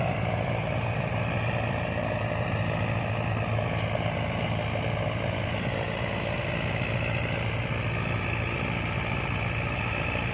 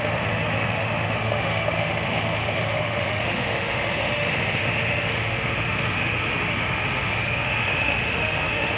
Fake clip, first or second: second